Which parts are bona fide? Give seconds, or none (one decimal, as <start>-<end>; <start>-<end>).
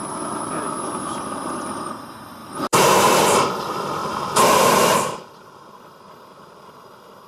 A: 0.0-2.4; 3.4-4.0; 5.6-7.3